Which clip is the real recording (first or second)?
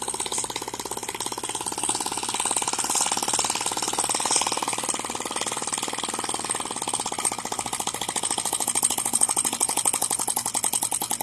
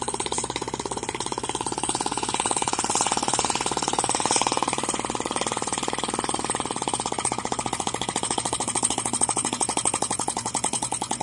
first